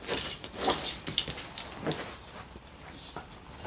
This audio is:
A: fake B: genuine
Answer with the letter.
A